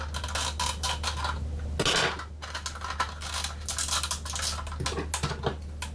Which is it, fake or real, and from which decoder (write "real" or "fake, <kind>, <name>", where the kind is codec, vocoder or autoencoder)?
real